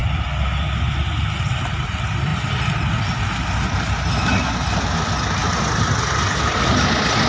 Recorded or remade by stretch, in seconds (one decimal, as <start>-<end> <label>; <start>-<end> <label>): 0.0-7.3 recorded